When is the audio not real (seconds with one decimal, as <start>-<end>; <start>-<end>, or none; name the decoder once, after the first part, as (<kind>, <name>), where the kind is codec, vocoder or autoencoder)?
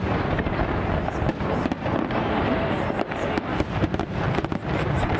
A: 3.5-4.5 (vocoder, BigVGAN v2)